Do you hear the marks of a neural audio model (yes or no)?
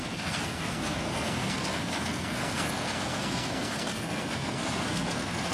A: yes